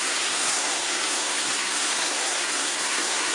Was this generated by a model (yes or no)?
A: yes